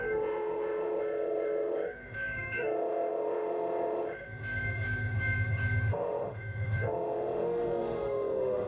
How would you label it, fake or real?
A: fake